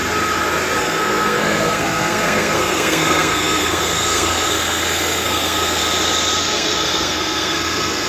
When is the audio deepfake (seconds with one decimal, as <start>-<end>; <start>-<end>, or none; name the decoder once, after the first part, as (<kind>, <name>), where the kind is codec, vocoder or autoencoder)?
0.8-5.8 (codec, SNAC); 6.4-8.1